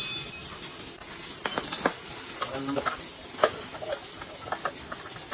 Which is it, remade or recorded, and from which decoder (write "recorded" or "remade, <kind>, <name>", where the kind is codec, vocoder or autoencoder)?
recorded